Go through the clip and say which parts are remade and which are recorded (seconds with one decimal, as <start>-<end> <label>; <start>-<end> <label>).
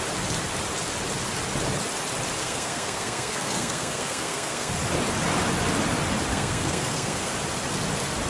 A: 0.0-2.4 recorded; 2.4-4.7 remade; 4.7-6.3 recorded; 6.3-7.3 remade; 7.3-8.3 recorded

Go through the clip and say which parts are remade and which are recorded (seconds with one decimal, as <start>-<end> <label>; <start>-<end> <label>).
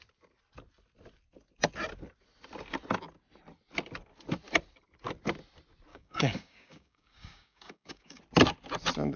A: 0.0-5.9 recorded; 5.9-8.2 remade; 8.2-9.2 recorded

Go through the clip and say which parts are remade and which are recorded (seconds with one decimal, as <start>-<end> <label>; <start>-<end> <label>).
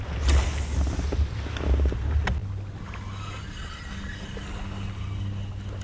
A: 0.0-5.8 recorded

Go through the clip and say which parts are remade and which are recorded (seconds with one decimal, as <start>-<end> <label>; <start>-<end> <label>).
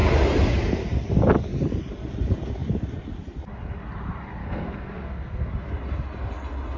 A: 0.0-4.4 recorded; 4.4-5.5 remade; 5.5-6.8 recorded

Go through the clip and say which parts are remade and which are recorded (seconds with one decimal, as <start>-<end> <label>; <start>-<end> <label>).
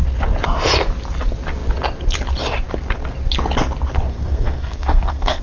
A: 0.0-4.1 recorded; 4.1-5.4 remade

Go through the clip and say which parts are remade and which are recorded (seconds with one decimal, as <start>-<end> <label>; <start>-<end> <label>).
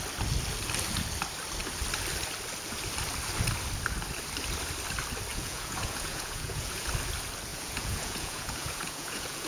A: 0.0-5.3 recorded; 5.3-6.9 remade; 6.9-7.5 recorded; 7.5-9.5 remade